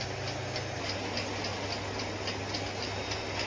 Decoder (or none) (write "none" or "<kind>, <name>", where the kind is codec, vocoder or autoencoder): none